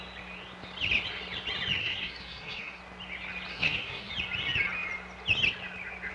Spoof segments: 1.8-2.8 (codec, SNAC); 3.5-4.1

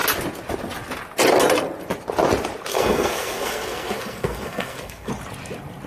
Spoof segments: 2.7-5.1 (codec, SNAC)

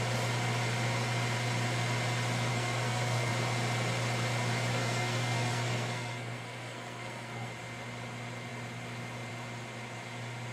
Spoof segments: 2.5-3.3 (codec, SNAC); 4.7-7.5

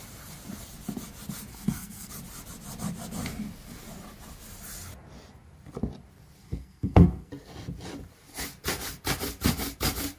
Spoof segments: 1.5-2.1 (codec, SNAC); 6.4-7.3

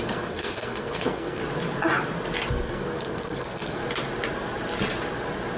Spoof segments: 0.0-1.4 (codec, SNAC); 2.5-3.8